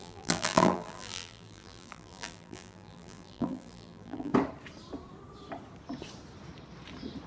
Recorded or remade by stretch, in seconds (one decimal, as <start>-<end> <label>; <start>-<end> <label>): 0.0-4.3 remade; 4.3-7.3 recorded